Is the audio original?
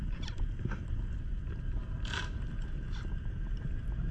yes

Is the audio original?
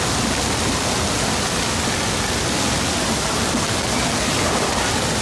yes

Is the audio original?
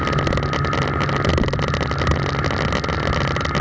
yes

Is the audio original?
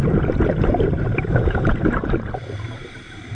no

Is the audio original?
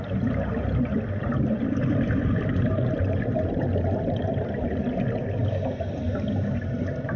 yes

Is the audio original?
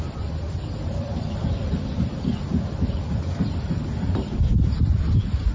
no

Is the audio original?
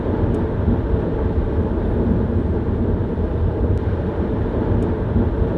no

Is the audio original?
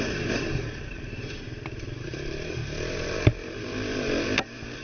no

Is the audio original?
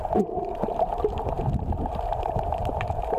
no